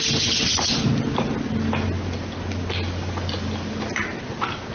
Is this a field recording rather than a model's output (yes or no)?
yes